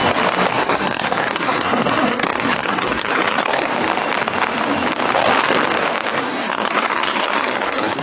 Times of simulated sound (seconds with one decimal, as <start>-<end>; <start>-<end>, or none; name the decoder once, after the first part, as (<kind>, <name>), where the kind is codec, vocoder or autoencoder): 0.5-3.7 (codec, SNAC); 6.2-8.0